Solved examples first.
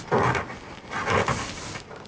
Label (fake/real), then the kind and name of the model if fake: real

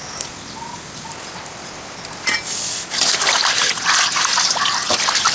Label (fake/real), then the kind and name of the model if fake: real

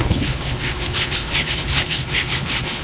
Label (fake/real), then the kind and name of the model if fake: fake, codec, HILCodec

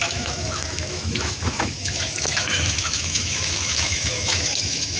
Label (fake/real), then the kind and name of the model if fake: fake, autoencoder, DAC-VAE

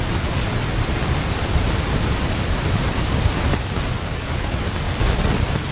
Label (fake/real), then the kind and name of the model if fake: fake, vocoder, BigVGAN v2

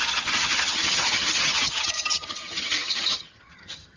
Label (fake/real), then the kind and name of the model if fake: fake, vocoder, HiFi-GAN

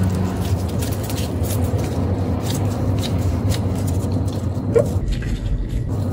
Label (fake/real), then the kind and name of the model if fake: real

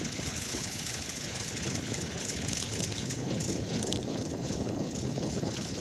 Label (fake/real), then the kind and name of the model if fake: fake, codec, HILCodec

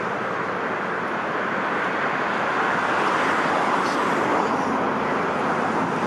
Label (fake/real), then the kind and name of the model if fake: real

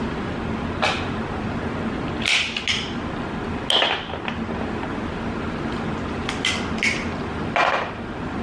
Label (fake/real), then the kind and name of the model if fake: real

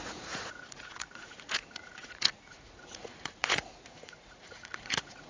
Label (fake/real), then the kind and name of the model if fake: fake, vocoder, Vocos